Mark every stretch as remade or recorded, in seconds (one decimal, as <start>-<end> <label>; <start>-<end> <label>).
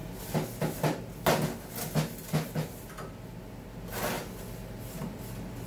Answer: 0.0-5.7 recorded